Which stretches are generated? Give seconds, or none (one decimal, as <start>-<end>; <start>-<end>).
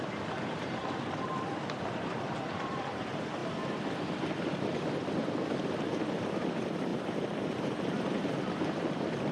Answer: 0.0-3.4; 6.2-6.9; 8.2-9.3